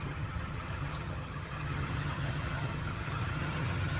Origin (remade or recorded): remade